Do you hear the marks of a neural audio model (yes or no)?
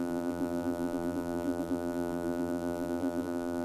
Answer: yes